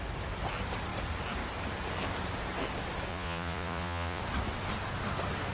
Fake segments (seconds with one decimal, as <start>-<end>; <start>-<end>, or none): 3.1-4.2